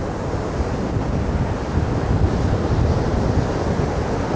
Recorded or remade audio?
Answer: recorded